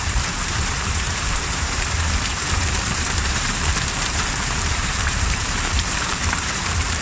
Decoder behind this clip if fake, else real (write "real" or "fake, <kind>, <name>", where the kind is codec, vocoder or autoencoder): fake, vocoder, BigVGAN v2